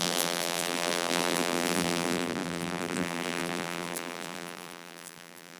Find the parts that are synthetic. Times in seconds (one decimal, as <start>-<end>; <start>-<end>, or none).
0.0-5.6